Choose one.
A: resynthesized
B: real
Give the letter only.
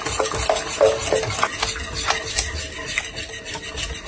B